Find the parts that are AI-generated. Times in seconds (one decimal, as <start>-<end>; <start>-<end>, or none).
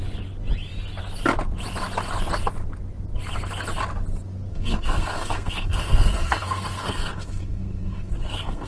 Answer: 4.5-8.7